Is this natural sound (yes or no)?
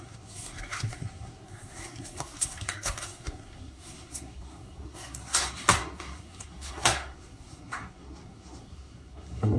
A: no